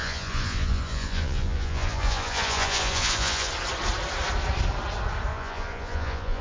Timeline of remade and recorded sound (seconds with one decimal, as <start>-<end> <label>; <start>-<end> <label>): 0.0-3.5 remade; 3.5-5.3 recorded; 5.3-6.4 remade